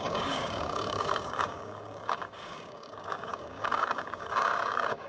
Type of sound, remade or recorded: remade